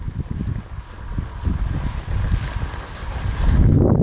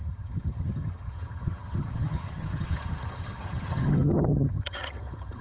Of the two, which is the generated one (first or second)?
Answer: second